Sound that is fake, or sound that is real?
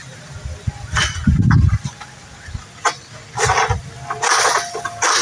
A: real